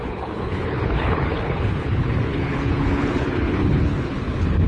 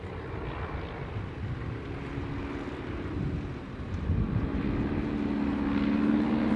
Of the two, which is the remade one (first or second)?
first